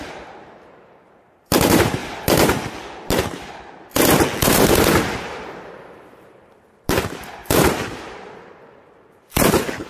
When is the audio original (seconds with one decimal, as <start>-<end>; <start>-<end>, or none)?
2.0-4.9